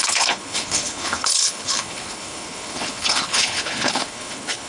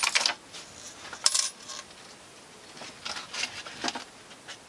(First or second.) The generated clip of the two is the first